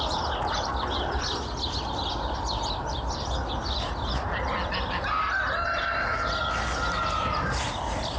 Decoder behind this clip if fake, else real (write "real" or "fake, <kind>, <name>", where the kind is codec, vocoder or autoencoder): real